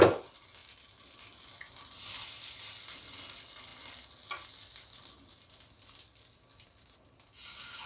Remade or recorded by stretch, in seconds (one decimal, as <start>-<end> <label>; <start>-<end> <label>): 0.0-7.9 recorded